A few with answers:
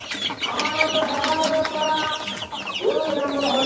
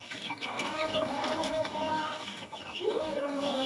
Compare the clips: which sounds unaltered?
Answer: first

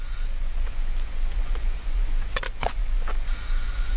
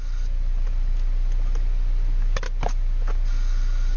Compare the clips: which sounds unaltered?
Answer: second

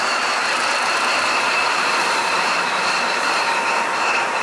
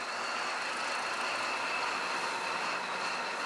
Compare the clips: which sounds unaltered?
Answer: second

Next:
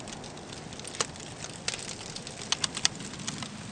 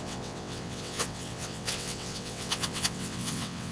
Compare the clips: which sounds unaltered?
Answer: first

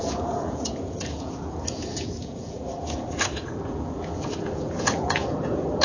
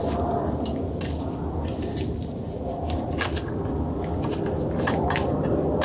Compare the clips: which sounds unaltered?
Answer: second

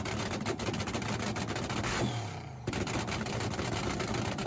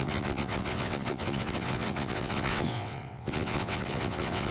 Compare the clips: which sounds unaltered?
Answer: first